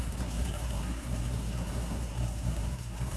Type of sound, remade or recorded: remade